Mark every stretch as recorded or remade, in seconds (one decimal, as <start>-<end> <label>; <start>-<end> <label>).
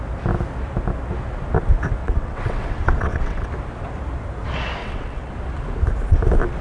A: 0.0-2.0 recorded; 2.0-3.5 remade; 3.5-4.8 recorded; 4.8-5.3 remade; 5.3-6.6 recorded